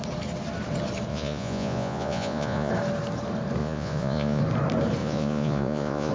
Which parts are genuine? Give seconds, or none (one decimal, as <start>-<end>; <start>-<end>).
0.0-1.1; 2.7-3.6; 4.4-5.0